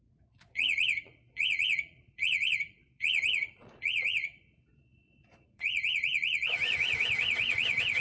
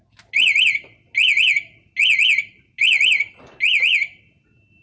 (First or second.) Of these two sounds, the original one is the second